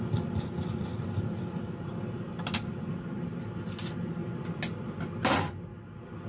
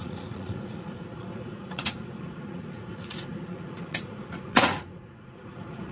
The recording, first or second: first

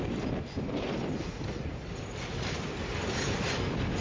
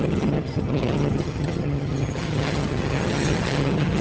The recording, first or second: first